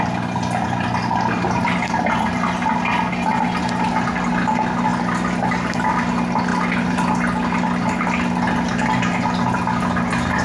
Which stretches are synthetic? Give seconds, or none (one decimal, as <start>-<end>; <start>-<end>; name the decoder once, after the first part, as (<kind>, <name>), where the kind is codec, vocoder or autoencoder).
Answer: none